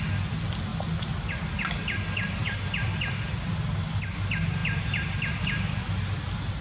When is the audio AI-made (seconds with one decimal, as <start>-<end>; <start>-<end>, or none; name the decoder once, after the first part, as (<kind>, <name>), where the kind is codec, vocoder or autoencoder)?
none